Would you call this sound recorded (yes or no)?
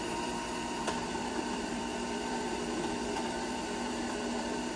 no